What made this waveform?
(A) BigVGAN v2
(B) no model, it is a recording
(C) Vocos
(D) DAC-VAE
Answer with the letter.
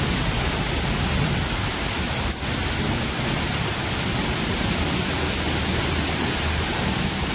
B